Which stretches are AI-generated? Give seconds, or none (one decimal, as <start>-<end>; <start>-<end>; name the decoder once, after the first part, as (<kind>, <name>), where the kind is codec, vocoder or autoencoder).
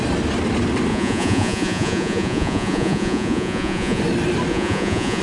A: 0.9-4.0 (vocoder, Vocos); 4.5-5.2